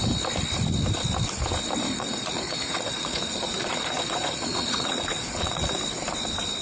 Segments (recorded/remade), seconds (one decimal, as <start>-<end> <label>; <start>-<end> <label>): 0.0-1.9 recorded; 1.9-5.8 remade; 5.8-6.6 recorded